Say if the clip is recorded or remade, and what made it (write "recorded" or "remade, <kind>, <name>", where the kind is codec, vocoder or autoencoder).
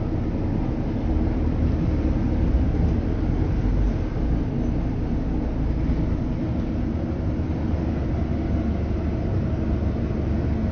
recorded